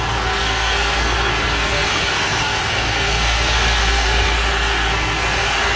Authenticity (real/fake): fake